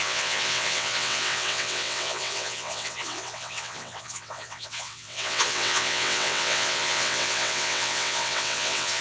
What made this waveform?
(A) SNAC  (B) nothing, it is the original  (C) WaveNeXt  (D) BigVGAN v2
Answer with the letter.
C